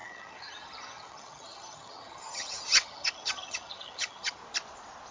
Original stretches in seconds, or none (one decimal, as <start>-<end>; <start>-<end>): 4.4-5.1